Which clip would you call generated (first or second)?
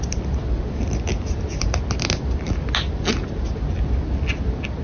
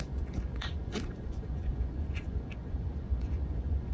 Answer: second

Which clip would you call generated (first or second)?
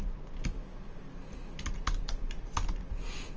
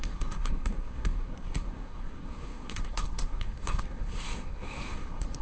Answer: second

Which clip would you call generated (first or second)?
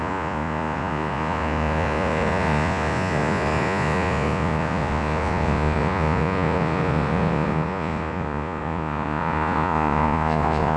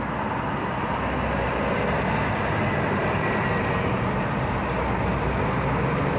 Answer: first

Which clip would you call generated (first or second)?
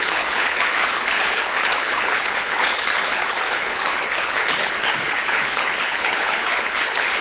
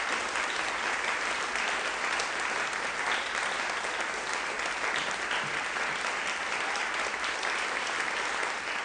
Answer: first